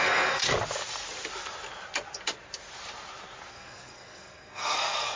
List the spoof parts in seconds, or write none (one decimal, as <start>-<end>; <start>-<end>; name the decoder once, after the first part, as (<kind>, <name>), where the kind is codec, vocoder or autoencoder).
0.0-0.4 (codec, SNAC); 3.5-5.2